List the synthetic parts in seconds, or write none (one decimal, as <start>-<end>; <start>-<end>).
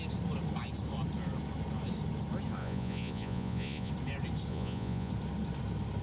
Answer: 2.6-3.9; 4.5-5.1